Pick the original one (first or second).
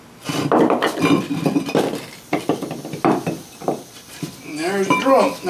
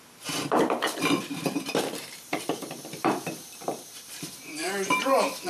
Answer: first